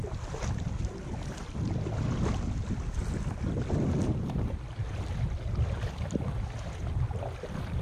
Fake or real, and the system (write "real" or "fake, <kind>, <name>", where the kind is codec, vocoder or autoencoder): real